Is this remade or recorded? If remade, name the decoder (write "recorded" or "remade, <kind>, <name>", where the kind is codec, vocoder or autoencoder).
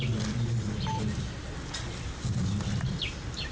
recorded